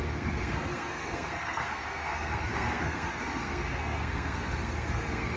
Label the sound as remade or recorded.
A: remade